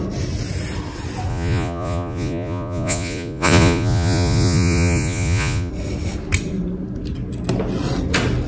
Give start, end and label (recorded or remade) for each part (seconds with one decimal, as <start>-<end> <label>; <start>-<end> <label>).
0.0-1.3 recorded; 1.3-5.7 remade; 5.7-8.5 recorded